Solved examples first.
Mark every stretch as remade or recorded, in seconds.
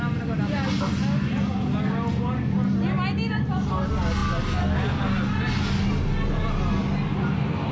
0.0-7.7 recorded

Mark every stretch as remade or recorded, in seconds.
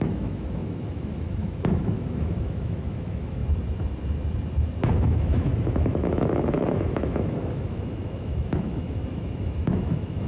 0.0-3.4 remade; 3.4-5.0 recorded; 5.0-10.3 remade